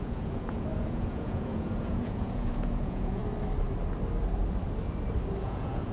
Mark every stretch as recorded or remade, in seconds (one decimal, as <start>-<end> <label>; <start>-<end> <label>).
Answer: 0.0-3.2 remade; 3.2-5.4 recorded; 5.4-5.9 remade